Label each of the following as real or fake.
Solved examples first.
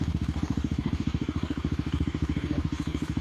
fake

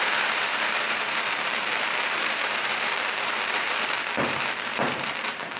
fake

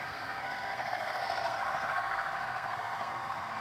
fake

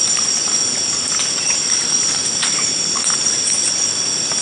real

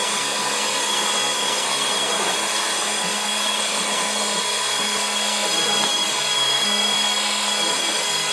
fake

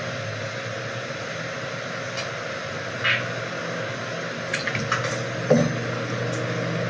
real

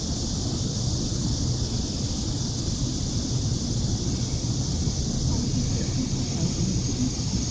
real